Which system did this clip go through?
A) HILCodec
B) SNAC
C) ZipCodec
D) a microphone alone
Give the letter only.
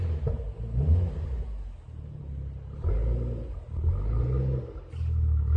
D